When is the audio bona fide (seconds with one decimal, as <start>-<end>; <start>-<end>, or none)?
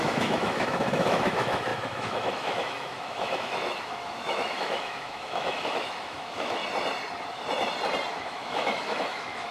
6.6-8.1